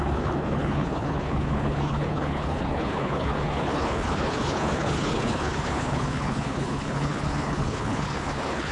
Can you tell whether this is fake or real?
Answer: fake